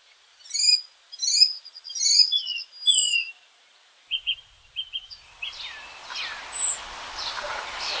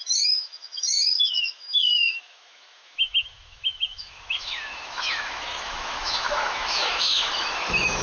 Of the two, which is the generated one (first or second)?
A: second